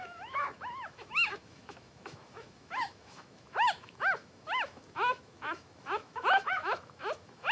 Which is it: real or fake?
fake